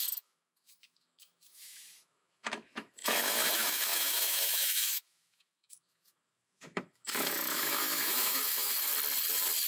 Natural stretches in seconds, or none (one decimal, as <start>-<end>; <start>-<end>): 8.9-9.7